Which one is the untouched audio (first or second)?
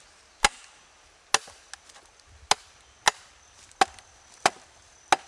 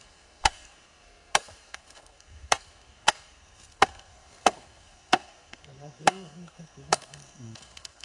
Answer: first